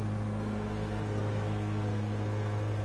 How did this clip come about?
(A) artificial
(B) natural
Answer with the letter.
A